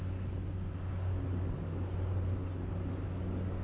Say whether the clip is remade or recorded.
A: recorded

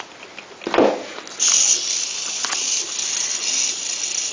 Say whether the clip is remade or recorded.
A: recorded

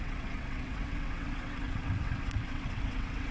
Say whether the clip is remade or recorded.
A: remade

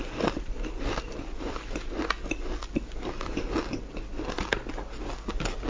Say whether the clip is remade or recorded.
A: recorded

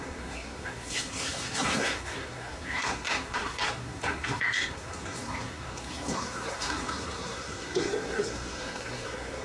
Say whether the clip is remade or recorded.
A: remade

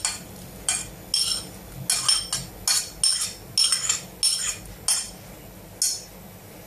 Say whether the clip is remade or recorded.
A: recorded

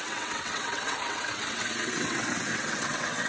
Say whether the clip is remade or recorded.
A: remade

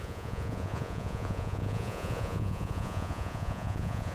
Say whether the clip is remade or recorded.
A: remade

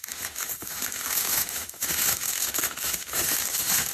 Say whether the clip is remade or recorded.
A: remade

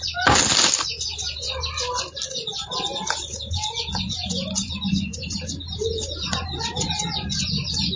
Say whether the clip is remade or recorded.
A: recorded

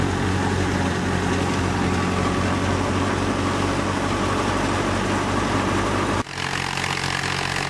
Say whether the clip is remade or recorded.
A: recorded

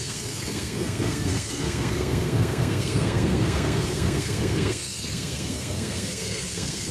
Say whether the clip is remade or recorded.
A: remade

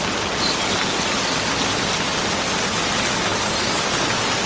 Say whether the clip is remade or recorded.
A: recorded